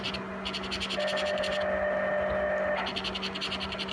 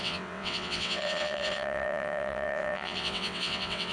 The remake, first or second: second